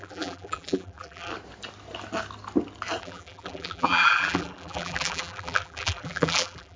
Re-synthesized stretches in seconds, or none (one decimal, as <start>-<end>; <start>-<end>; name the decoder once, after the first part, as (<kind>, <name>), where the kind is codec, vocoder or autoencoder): 0.0-1.3 (vocoder, BigVGAN v2); 3.0-6.8